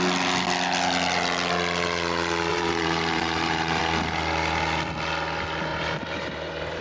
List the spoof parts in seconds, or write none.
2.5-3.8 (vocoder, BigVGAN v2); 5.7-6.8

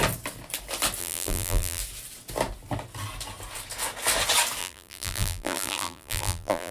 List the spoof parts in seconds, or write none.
1.0-1.8 (vocoder, BigVGAN v2); 4.6-6.7

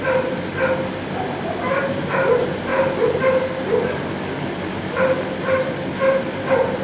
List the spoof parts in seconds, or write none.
none

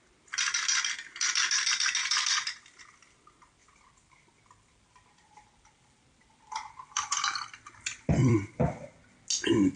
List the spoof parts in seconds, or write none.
2.0-2.8 (vocoder, BigVGAN v2); 3.6-7.6; 8.2-8.8

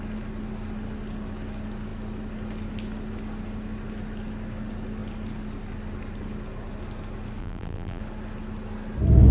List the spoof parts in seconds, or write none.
7.4-8.0 (vocoder, BigVGAN v2)

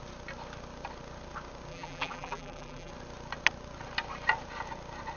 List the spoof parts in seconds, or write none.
1.7-2.9 (vocoder, BigVGAN v2)